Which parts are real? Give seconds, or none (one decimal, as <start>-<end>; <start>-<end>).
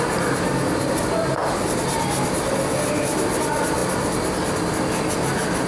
0.0-5.7